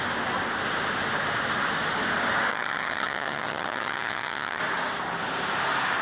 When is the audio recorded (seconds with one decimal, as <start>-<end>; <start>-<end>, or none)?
0.0-2.5; 4.6-6.0